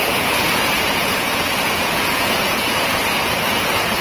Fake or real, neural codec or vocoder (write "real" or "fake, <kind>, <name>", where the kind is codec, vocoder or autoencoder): fake, vocoder, Vocos